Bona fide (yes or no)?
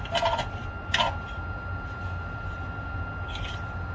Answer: yes